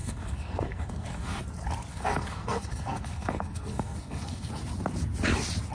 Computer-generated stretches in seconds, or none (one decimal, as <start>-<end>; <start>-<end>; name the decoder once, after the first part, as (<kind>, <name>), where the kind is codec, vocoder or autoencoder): 0.0-1.4 (codec, SNAC); 1.9-4.5